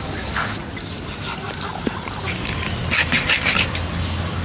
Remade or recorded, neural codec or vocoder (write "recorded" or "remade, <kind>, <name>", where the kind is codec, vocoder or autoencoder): recorded